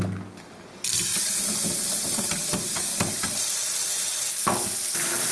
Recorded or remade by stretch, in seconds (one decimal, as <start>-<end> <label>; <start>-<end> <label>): 0.0-1.1 recorded; 1.1-4.3 remade; 4.3-5.3 recorded